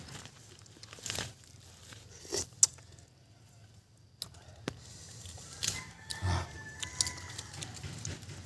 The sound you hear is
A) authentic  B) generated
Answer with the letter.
A